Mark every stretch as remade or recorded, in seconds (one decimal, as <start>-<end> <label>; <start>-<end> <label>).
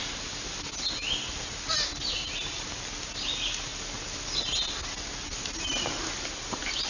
0.0-6.9 recorded